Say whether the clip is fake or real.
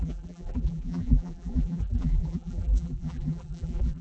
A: fake